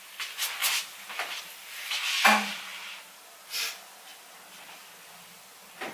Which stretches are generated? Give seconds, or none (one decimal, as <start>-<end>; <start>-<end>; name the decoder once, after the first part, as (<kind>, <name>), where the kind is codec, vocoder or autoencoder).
none